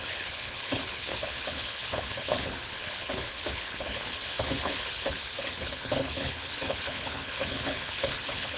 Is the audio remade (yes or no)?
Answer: yes